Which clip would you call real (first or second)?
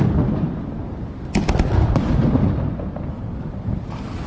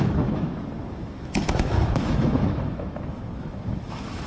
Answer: first